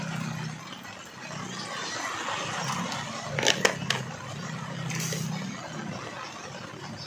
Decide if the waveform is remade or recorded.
recorded